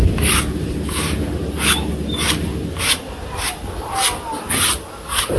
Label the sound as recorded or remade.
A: recorded